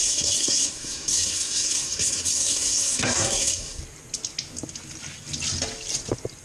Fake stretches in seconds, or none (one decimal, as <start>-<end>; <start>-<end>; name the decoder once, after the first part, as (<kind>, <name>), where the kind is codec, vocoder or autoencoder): 0.0-3.8 (codec, SNAC)